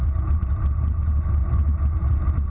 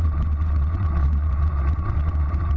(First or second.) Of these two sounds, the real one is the first